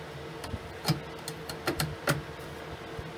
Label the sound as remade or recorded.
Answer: recorded